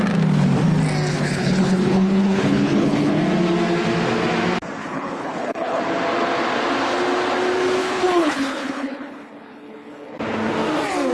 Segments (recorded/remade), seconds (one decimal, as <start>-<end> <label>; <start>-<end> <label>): 0.0-1.1 recorded; 1.1-3.2 remade; 3.2-4.8 recorded; 4.8-5.8 remade; 5.8-7.8 recorded; 7.8-10.2 remade; 10.2-11.1 recorded